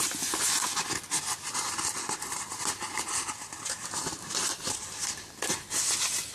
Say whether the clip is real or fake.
real